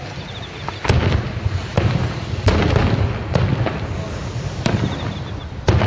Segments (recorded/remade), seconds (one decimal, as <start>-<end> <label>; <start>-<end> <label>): 0.0-5.9 recorded